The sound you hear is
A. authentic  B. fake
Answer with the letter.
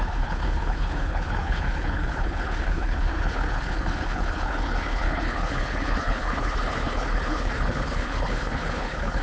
B